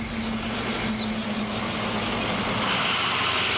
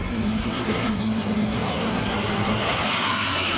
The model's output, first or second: second